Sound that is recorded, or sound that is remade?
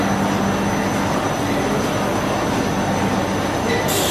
recorded